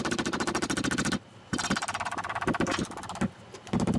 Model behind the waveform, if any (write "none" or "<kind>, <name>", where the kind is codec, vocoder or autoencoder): none